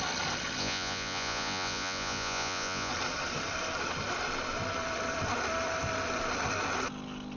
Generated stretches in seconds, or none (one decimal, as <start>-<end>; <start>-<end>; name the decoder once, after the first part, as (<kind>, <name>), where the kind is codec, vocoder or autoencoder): 0.6-2.9 (vocoder, Vocos)